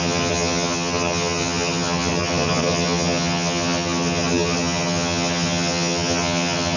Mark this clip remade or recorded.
remade